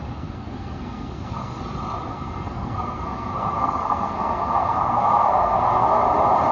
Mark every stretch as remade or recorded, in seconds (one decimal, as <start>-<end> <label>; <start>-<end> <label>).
0.0-1.6 remade; 1.6-2.1 recorded; 2.1-6.0 remade; 6.0-6.5 recorded